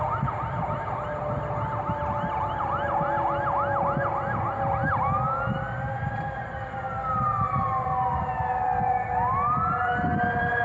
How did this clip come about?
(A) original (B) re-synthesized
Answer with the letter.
A